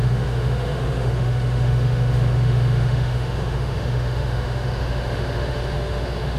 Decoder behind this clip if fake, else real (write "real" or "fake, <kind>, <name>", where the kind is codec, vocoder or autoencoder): fake, autoencoder, DAC-VAE